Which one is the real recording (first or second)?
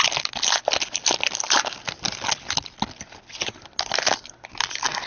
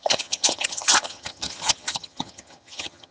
first